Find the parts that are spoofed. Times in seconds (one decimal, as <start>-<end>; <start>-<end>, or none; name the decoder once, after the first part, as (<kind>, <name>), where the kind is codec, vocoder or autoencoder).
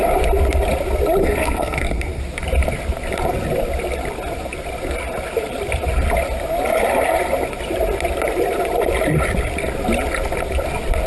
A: 1.2-2.2 (codec, SNAC)